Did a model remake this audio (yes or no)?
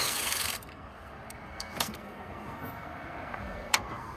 yes